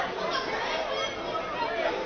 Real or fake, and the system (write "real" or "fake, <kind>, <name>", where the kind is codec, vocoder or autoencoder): real